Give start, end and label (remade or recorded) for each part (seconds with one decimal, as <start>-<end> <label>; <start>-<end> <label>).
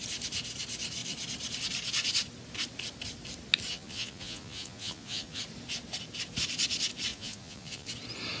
0.0-3.7 recorded; 3.7-5.4 remade; 5.4-7.1 recorded; 7.1-7.9 remade; 7.9-8.4 recorded